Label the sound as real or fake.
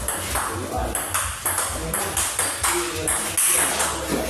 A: real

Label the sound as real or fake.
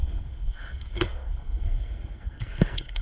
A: fake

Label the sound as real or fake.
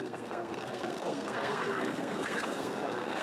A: fake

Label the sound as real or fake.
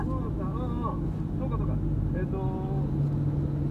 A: real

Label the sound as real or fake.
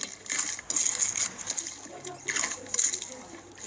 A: real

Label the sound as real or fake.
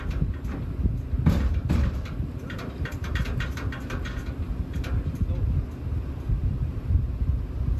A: real